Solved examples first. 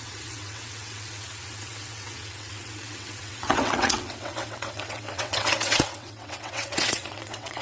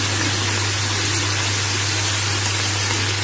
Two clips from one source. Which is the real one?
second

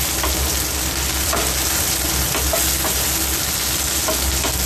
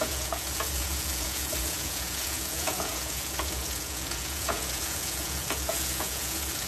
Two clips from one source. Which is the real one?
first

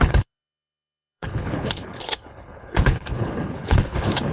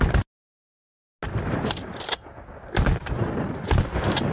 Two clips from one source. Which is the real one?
second